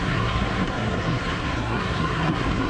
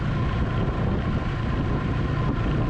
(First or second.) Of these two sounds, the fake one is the first